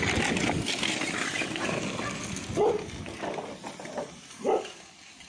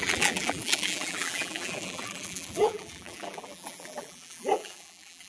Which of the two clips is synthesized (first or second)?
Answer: second